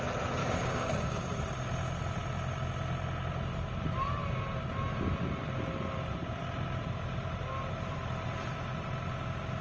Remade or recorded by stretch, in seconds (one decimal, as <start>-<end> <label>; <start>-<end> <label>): 0.0-0.4 recorded; 0.4-1.3 remade; 1.3-9.6 recorded